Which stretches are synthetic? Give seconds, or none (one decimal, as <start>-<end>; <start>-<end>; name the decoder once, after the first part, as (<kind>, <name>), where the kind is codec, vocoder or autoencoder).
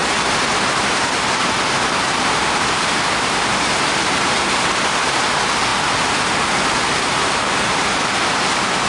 0.0-4.7 (vocoder, BigVGAN v2)